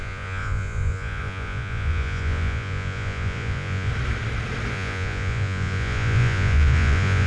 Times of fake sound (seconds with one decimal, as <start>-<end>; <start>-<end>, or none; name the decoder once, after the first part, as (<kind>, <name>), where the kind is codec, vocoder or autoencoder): 0.0-3.9 (vocoder, Vocos); 4.7-7.3